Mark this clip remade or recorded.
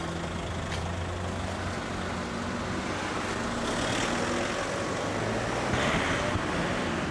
recorded